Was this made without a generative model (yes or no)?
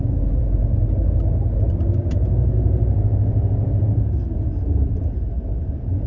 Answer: yes